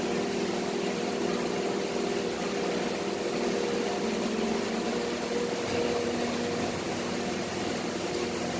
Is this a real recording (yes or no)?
yes